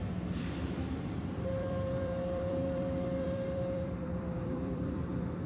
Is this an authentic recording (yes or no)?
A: no